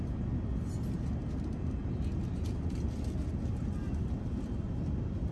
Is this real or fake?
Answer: real